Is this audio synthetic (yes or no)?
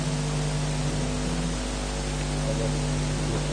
no